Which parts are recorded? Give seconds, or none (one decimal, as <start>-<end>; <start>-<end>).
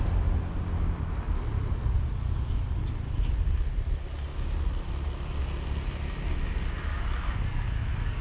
0.0-6.9